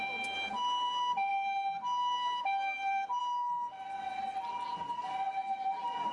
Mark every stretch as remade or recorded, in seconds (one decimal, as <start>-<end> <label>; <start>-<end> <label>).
0.0-6.1 recorded